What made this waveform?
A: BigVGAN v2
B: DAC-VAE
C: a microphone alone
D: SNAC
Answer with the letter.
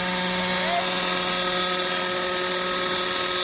C